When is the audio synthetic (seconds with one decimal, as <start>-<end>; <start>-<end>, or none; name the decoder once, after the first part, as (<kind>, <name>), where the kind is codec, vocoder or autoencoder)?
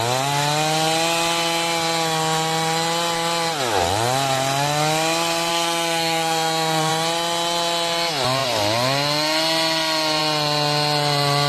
5.5-6.9 (codec, SNAC)